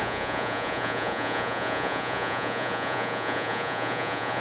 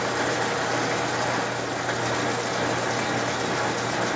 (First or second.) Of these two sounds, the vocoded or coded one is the first